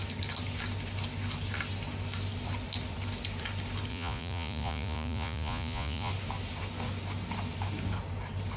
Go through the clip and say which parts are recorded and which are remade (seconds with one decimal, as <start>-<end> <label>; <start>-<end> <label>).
0.0-3.9 recorded; 3.9-6.1 remade; 6.1-8.6 recorded